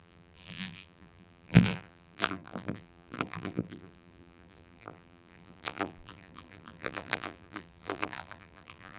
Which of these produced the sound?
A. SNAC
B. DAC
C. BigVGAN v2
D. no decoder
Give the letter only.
C